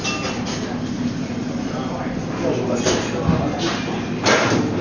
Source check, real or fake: real